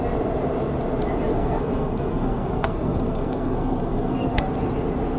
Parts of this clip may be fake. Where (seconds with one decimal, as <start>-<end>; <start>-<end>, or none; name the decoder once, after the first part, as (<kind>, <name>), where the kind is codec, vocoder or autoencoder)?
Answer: 1.3-4.4 (codec, SNAC)